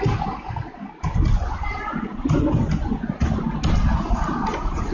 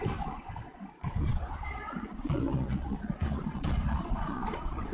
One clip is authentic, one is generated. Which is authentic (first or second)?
first